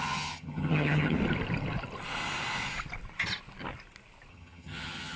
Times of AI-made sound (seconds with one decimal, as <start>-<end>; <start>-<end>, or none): 0.0-1.2; 4.3-5.2